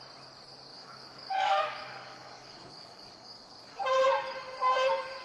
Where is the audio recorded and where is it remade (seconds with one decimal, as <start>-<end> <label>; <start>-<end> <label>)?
0.0-0.7 recorded; 0.7-3.8 remade; 3.8-5.2 recorded